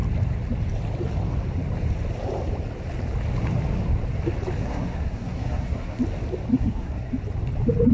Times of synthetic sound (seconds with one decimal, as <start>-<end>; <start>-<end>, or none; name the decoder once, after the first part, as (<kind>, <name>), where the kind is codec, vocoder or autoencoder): 4.6-6.0 (codec, SNAC); 6.5-7.1